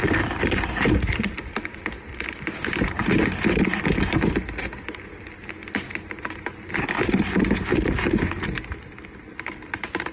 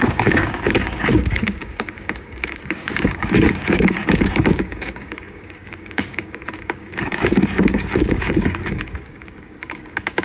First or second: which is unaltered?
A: first